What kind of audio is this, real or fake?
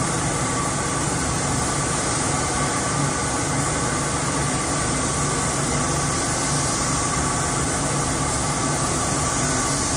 real